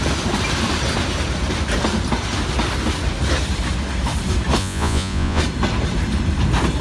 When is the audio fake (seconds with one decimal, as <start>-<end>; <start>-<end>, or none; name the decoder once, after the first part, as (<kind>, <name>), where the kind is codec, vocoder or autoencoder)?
4.6-5.4 (vocoder, Vocos)